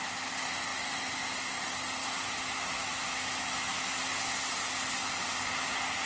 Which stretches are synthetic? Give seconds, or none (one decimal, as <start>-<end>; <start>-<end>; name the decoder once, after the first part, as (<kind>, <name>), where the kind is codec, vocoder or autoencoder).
2.0-4.0 (autoencoder, DAC-VAE)